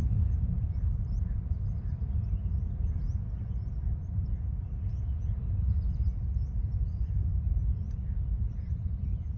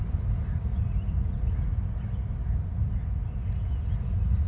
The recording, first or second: second